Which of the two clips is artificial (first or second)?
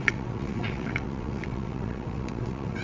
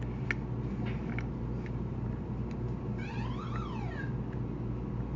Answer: first